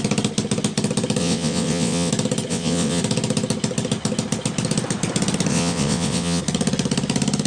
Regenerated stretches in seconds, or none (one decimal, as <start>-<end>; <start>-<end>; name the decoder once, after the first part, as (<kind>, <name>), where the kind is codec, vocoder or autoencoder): 1.2-2.1 (vocoder, WaveNeXt); 2.5-3.0; 5.5-6.4

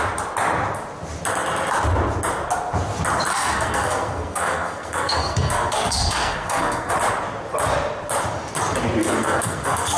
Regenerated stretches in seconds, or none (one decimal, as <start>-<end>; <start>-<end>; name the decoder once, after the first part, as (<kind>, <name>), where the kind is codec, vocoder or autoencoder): 3.3-6.9 (codec, SNAC); 9.0-10.0

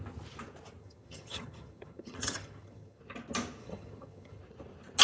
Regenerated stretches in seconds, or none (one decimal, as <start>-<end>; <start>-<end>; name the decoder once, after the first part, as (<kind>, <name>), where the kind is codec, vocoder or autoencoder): 0.8-3.0 (vocoder, HiFi-GAN); 3.6-4.4

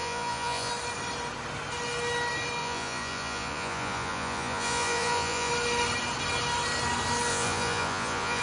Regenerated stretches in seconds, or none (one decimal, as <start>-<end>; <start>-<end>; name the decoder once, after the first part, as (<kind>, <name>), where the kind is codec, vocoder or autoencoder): 0.0-0.7 (vocoder, Vocos); 2.6-5.5; 7.3-8.4

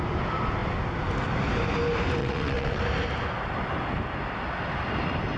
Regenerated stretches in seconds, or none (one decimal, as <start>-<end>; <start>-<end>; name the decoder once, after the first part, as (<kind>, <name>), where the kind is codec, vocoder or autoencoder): 2.2-2.8 (vocoder, WaveNeXt)

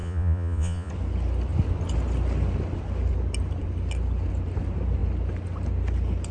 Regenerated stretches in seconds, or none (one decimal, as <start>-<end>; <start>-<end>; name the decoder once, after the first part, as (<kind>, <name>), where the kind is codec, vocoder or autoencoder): 0.0-0.9 (vocoder, Vocos)

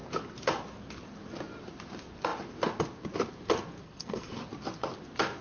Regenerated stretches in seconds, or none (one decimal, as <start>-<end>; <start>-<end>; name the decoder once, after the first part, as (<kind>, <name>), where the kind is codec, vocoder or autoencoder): 3.8-4.4 (codec, SNAC)

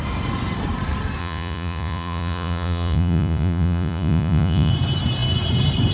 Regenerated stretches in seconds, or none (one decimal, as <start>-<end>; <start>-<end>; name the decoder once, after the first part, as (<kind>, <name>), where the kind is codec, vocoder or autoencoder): 1.2-4.7 (vocoder, Vocos)